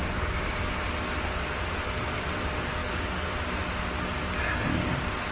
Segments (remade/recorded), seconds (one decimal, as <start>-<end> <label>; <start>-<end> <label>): 0.0-5.3 recorded